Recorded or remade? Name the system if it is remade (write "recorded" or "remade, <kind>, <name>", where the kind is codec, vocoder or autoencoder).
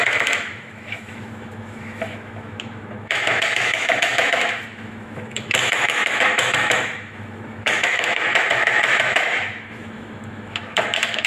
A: remade, autoencoder, DAC-VAE